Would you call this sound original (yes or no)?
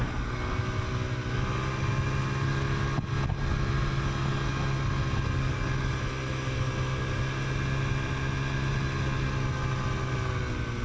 yes